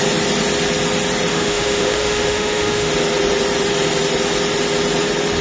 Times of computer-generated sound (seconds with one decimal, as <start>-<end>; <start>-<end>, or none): 1.3-2.9